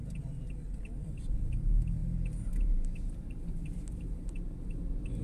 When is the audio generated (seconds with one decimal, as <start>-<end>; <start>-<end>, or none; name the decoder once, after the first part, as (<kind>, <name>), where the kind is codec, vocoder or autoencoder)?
1.1-5.2 (vocoder, BigVGAN v2)